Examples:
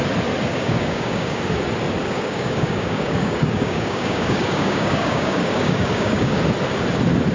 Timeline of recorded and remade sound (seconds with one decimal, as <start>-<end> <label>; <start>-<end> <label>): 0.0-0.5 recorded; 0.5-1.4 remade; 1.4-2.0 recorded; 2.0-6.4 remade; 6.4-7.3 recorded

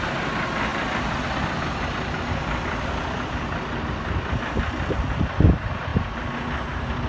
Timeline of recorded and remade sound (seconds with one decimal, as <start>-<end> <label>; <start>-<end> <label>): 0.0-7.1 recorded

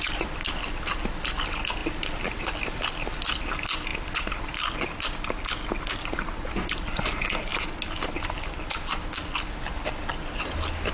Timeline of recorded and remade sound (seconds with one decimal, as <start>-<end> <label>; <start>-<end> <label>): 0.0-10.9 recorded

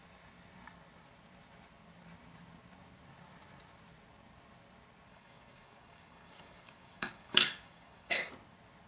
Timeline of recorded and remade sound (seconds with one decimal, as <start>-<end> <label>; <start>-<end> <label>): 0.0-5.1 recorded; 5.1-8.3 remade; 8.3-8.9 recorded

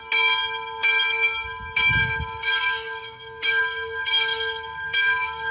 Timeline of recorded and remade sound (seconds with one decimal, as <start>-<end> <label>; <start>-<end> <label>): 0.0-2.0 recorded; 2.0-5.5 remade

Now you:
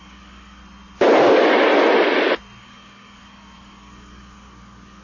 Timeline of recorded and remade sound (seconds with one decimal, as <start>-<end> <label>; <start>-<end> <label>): 0.0-0.6 remade; 0.6-2.6 recorded; 2.6-5.0 remade

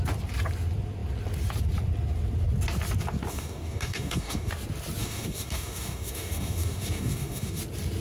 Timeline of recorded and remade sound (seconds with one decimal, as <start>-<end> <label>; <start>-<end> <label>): 0.0-3.3 recorded; 3.3-4.5 remade; 4.5-5.0 recorded; 5.0-7.6 remade; 7.6-8.0 recorded

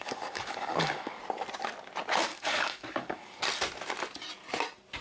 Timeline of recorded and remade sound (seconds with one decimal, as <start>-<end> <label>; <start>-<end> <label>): 0.0-1.2 remade; 1.2-2.3 recorded; 2.3-3.4 remade; 3.4-5.0 recorded